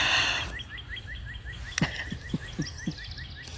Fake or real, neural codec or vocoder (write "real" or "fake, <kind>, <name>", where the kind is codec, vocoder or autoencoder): real